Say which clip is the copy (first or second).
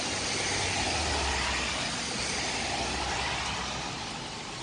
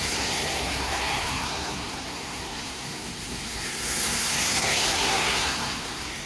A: second